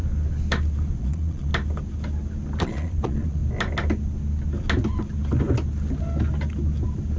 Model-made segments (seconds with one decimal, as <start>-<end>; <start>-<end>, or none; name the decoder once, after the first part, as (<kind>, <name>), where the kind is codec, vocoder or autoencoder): 1.0-1.5 (vocoder, Vocos); 2.6-3.4